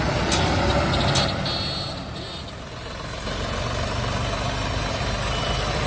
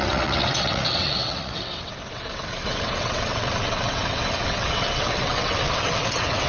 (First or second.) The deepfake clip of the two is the second